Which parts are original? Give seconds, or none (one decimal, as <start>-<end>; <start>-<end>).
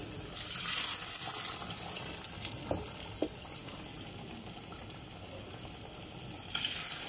0.0-7.1